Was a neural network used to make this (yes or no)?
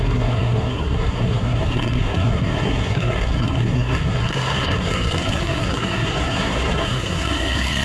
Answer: yes